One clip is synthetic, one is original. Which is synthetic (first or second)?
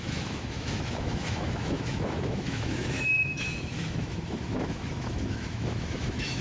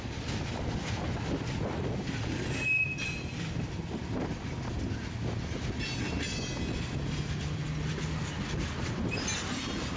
first